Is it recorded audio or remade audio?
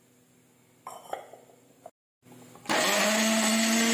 recorded